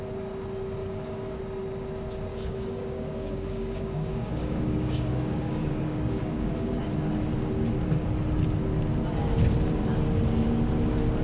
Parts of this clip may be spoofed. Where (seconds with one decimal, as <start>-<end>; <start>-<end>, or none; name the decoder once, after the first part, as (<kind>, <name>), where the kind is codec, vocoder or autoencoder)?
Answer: 0.8-1.4 (codec, DAC); 2.3-6.8